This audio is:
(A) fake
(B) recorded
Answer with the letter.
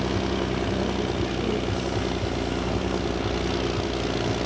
B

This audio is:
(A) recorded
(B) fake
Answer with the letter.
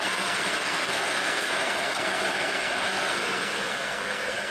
B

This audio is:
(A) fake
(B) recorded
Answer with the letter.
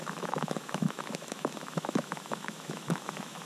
A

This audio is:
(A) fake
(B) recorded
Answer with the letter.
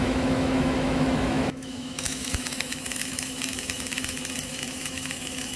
A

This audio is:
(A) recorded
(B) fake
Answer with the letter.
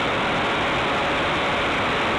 A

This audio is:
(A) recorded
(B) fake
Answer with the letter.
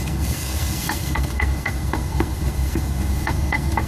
B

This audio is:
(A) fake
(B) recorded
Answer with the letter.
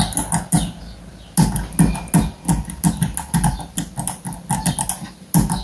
B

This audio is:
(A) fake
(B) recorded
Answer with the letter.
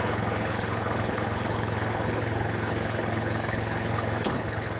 A